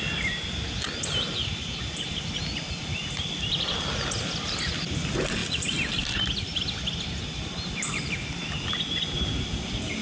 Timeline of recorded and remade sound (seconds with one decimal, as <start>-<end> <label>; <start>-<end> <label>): 0.0-10.0 recorded